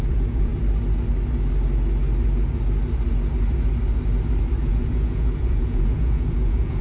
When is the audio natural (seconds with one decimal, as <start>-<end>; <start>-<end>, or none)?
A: 0.5-4.6